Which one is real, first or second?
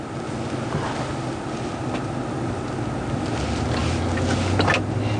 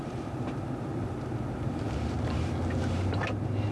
first